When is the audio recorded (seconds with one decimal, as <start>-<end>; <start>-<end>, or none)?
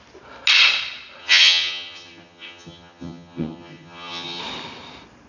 0.0-1.2; 4.4-5.3